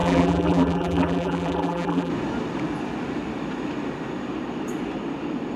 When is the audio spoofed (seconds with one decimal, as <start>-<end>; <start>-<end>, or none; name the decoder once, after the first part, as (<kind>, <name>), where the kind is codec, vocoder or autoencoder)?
0.0-2.1 (vocoder, BigVGAN v2)